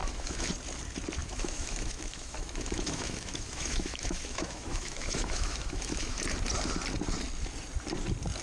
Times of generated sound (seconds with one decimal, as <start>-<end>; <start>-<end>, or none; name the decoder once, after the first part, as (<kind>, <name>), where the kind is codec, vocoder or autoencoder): 0.0-0.5 (autoencoder, DAC-VAE); 1.2-6.2